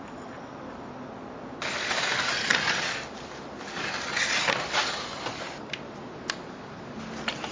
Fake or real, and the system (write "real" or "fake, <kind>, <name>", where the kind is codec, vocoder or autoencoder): real